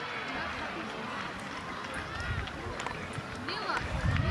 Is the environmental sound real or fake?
real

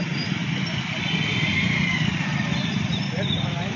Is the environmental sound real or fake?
real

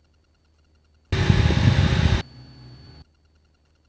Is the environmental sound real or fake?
real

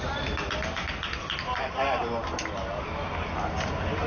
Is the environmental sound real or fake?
real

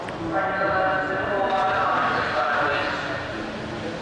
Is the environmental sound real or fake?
real